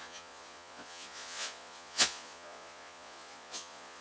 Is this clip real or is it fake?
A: fake